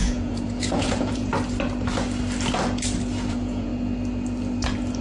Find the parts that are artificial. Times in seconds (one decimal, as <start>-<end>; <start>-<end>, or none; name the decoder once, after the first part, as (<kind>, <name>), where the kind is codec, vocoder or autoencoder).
0.0-1.3 (vocoder, Vocos); 3.3-3.7